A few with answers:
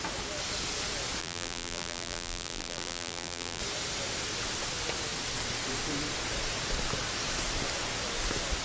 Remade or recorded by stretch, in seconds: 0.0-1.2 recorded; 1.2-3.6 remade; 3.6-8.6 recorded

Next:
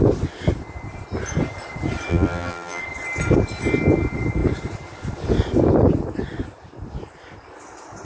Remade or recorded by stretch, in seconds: 0.0-2.1 recorded; 2.1-2.8 remade; 2.8-8.0 recorded

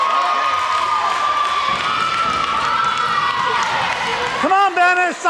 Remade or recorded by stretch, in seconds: 0.0-5.3 recorded

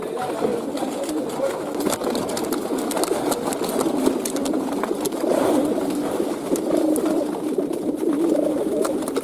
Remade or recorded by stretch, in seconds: 0.0-4.4 recorded; 4.4-8.5 remade; 8.5-9.2 recorded

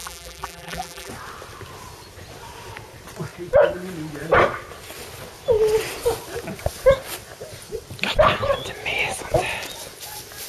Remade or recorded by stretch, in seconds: 0.0-1.1 remade; 1.1-10.5 recorded

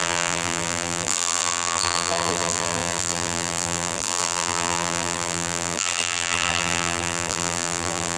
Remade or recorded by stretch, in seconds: 0.0-8.2 remade